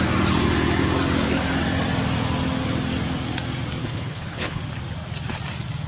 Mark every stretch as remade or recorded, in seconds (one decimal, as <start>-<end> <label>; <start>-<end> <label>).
0.0-3.8 recorded; 3.8-4.6 remade; 4.6-5.9 recorded